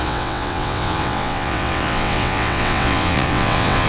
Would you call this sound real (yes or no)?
no